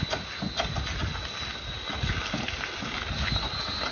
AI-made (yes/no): no